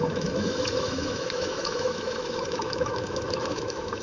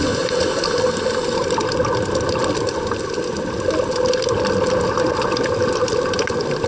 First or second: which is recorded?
second